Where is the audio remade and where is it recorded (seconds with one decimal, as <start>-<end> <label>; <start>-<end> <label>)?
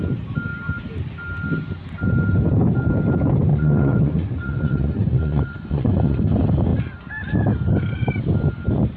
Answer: 0.0-3.5 recorded; 3.5-6.2 remade; 6.2-9.0 recorded